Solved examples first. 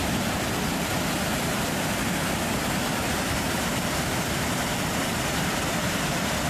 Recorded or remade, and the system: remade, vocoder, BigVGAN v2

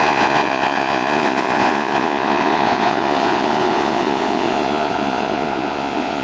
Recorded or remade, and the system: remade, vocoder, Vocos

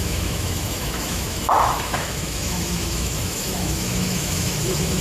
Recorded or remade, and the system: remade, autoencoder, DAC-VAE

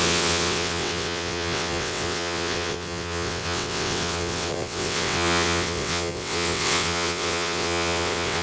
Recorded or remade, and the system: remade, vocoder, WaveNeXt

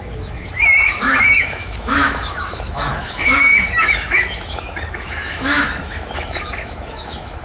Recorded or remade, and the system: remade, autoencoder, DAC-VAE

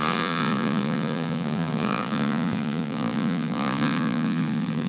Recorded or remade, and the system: remade, vocoder, Vocos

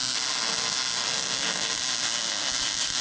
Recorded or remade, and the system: recorded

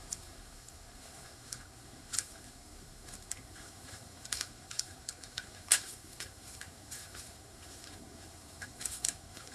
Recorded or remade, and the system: remade, codec, SNAC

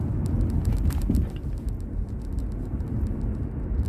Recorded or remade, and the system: recorded